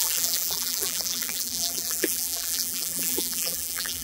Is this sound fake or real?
fake